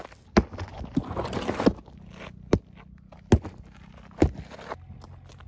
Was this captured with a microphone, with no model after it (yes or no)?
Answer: yes